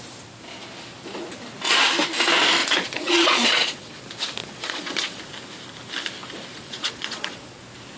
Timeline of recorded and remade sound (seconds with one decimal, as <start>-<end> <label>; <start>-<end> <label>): 0.0-2.6 recorded; 2.6-4.0 remade; 4.0-4.4 recorded; 4.4-5.2 remade; 5.2-6.5 recorded; 6.5-7.6 remade; 7.6-8.0 recorded